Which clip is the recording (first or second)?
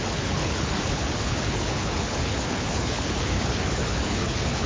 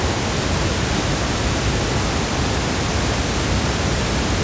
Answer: second